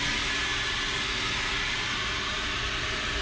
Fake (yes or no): no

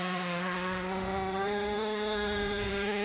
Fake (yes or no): yes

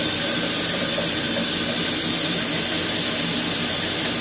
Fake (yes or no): no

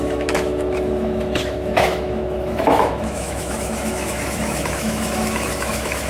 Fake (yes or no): yes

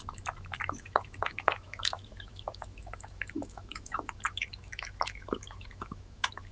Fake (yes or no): yes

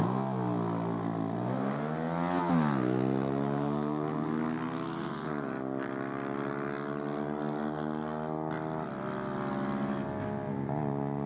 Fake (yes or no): no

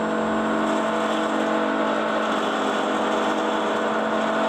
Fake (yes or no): no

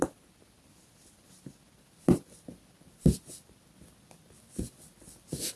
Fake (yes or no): no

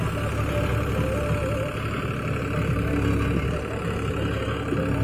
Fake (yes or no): no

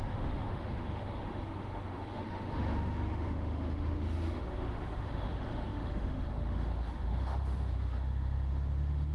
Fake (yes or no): yes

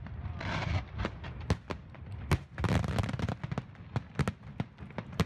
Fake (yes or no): no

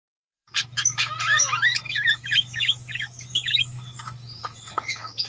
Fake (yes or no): yes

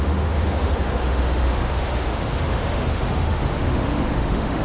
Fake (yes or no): yes